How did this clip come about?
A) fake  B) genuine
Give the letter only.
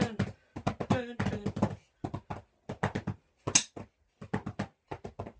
B